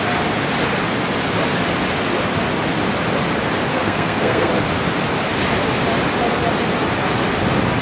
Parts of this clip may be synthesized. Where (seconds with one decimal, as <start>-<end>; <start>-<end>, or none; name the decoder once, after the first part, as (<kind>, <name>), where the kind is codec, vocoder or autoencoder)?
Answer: 3.7-4.5 (codec, SNAC)